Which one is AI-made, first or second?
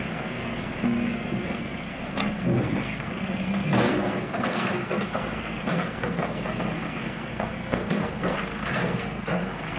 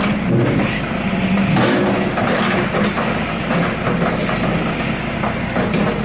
first